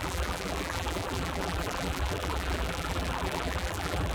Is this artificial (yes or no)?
yes